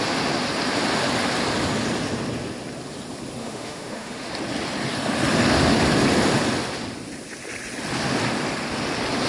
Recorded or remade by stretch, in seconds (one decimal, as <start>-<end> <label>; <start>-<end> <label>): 0.0-3.4 recorded; 3.4-4.3 remade; 4.3-9.3 recorded